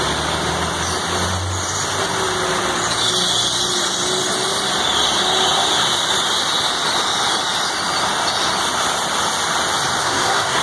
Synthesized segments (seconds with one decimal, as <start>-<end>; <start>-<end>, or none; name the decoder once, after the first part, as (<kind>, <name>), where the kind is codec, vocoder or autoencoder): 10.0-10.6 (codec, SNAC)